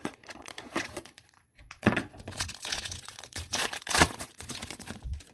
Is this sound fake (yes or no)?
yes